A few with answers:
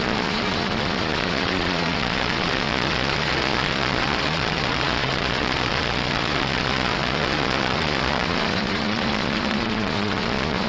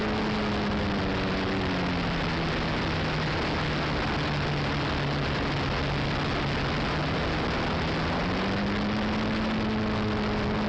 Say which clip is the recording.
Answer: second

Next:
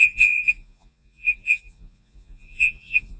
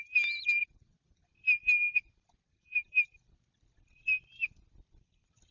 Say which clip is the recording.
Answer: second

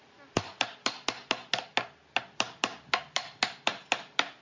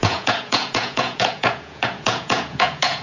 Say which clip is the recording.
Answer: first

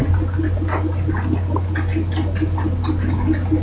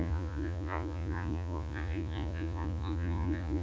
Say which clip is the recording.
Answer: first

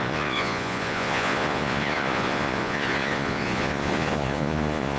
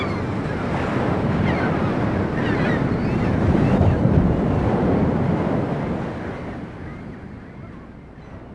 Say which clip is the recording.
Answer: second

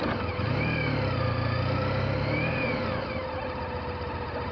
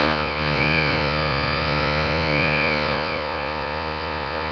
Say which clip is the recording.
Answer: first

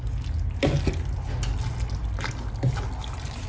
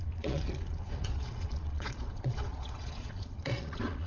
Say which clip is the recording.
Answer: first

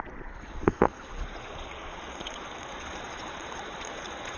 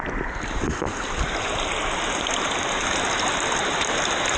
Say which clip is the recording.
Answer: second